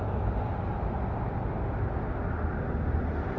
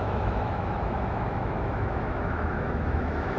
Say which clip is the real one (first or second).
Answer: first